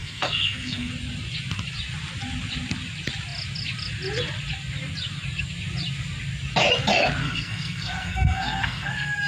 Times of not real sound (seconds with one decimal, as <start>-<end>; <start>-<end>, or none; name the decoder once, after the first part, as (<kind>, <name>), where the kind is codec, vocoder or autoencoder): 0.0-0.9 (codec, SNAC); 7.2-9.3